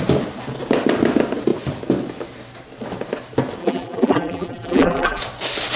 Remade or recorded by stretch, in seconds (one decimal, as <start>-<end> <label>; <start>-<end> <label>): 0.0-3.6 recorded; 3.6-5.2 remade; 5.2-5.8 recorded